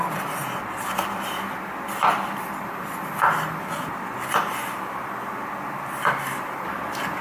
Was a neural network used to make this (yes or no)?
no